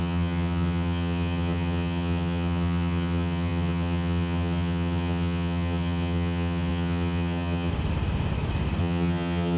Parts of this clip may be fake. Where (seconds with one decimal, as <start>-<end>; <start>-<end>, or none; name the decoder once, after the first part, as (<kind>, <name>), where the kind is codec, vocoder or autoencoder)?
0.0-7.7 (vocoder, HiFi-GAN); 8.8-9.6